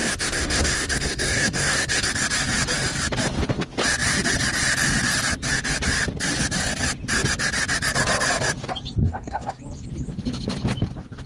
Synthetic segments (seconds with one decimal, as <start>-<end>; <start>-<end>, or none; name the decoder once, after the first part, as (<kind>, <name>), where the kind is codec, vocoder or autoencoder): 0.0-2.1 (codec, SNAC); 9.0-9.6